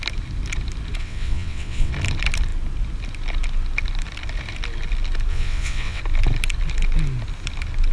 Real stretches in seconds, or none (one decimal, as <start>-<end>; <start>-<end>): 0.0-1.0; 1.9-5.3; 6.0-7.9